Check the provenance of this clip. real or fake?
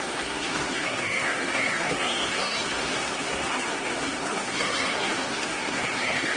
fake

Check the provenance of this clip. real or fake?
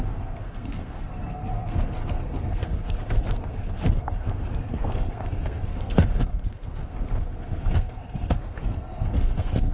fake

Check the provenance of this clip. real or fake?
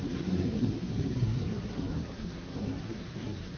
fake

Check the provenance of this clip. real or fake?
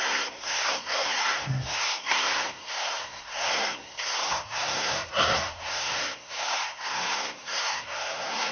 fake